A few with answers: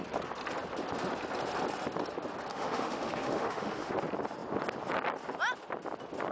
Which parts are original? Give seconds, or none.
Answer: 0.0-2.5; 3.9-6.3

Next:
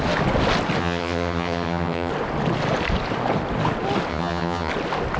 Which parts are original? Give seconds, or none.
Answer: 0.0-0.8; 2.1-4.1; 4.7-5.2

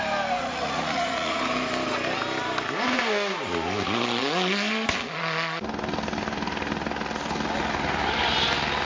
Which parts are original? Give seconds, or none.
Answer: 0.0-0.4; 1.4-8.8

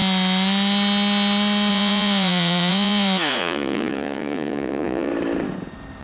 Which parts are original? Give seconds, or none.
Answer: 0.0-1.7; 5.1-6.0